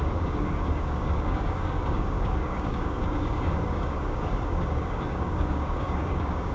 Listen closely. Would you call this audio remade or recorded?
remade